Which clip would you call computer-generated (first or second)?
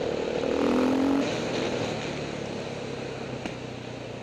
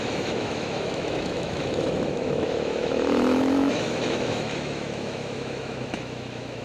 second